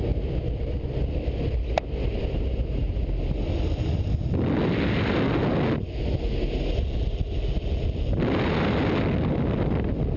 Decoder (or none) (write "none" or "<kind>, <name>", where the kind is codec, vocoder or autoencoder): none